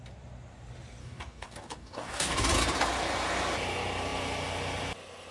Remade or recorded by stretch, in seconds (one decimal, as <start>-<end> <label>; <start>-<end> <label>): 0.0-1.0 recorded; 1.0-2.5 remade; 2.5-5.3 recorded